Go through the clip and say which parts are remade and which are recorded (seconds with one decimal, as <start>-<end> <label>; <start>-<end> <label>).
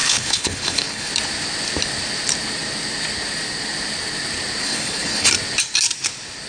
0.0-1.1 remade; 1.1-4.6 recorded; 4.6-5.3 remade; 5.3-6.5 recorded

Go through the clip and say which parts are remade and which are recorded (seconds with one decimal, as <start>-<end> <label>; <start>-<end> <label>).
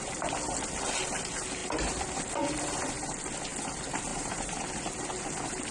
0.0-4.1 recorded; 4.1-4.7 remade; 4.7-5.7 recorded